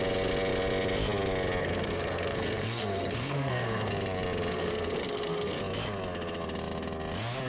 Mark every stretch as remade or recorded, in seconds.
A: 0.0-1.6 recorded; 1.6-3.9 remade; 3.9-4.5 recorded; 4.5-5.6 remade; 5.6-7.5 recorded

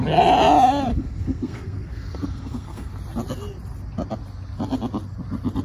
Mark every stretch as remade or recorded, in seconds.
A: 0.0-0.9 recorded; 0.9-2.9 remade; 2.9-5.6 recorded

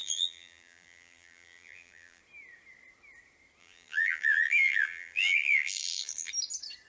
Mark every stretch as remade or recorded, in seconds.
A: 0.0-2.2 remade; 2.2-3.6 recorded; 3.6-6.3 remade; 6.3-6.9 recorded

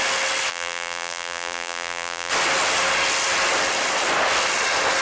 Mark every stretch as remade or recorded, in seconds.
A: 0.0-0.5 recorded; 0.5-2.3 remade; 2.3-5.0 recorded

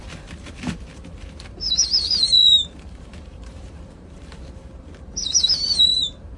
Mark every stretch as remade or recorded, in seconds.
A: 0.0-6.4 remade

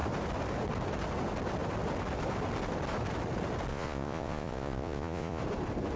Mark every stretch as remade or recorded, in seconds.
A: 0.0-3.7 recorded; 3.7-5.4 remade; 5.4-6.0 recorded

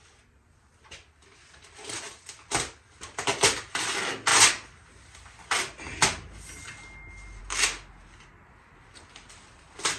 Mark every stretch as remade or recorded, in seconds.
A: 0.0-10.0 recorded

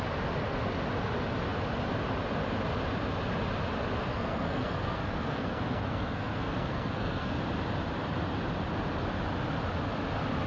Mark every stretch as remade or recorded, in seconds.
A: 0.0-4.1 recorded; 4.1-7.4 remade; 7.4-10.5 recorded